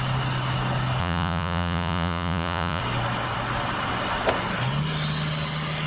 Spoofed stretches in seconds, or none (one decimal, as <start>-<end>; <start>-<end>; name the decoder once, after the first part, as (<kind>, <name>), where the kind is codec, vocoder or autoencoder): 1.0-2.8 (vocoder, Vocos)